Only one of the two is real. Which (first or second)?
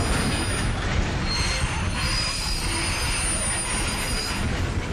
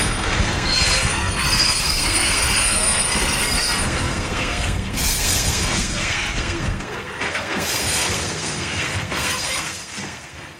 first